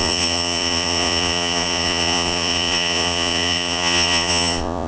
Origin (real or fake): fake